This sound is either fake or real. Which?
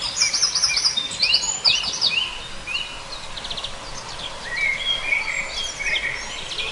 real